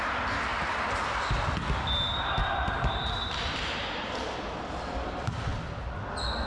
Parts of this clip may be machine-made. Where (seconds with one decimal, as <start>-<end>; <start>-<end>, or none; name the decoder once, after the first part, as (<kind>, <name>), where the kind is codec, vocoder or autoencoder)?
0.5-1.0 (vocoder, BigVGAN v2); 2.4-4.3